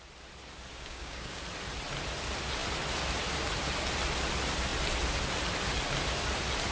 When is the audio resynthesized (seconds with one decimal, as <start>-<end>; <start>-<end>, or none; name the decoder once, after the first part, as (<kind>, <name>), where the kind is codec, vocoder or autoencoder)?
0.7-1.4 (codec, DAC)